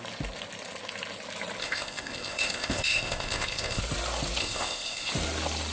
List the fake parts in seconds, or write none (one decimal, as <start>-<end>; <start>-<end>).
1.6-3.8; 4.4-5.1